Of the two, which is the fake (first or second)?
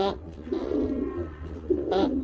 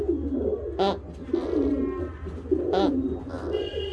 first